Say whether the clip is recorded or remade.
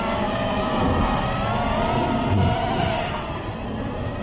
recorded